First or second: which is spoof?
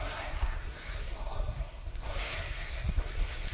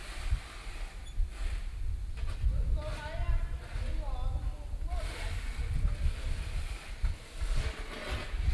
first